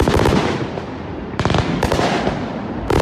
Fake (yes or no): no